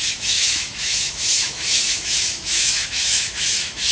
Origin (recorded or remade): remade